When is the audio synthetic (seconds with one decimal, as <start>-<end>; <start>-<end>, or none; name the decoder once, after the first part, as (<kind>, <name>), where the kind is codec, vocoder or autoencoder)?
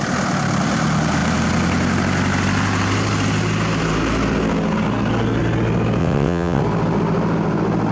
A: 6.0-6.6 (vocoder, WaveNeXt)